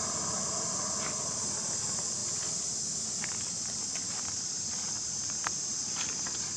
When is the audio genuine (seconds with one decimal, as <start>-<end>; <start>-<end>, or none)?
0.0-6.6